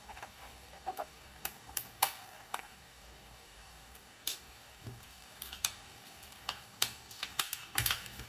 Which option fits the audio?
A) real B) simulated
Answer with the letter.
B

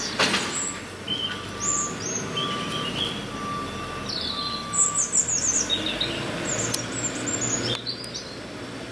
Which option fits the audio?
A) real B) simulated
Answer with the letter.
A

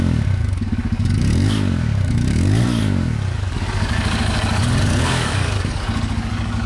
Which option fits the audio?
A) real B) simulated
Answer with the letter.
B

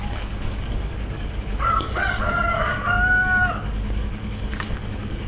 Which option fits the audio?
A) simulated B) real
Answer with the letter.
A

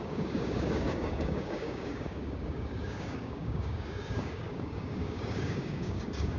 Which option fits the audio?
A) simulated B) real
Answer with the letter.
A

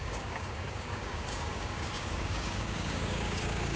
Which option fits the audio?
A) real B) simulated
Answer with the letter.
B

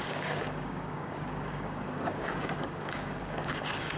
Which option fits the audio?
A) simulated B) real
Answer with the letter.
A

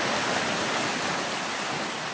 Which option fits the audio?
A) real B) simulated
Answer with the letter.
A